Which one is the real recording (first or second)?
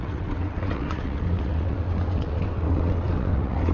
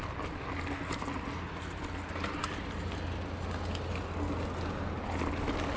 second